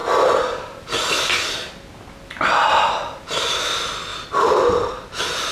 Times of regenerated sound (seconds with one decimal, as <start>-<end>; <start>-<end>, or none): 4.1-4.9